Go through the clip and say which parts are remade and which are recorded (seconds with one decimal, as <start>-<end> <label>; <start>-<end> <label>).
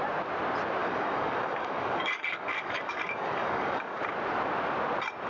0.0-0.8 recorded; 0.8-4.0 remade; 4.0-5.3 recorded